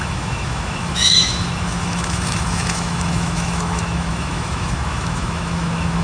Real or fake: fake